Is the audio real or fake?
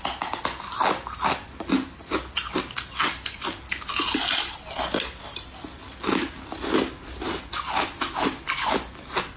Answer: real